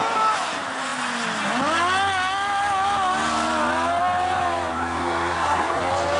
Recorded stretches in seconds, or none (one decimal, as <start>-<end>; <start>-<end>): 0.0-4.7; 5.8-6.2